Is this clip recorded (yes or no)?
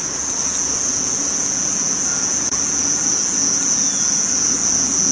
no